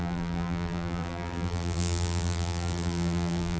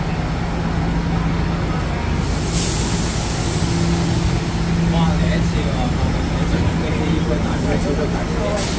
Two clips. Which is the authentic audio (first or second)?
second